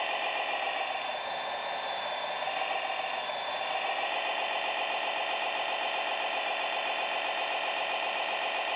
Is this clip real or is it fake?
real